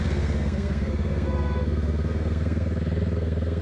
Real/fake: fake